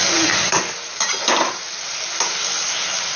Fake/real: real